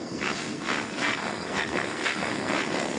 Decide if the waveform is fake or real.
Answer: fake